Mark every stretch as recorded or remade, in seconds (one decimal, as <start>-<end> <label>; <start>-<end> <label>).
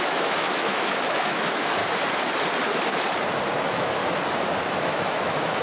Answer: 0.0-1.8 remade; 1.8-3.6 recorded; 3.6-4.0 remade; 4.0-4.7 recorded; 4.7-5.6 remade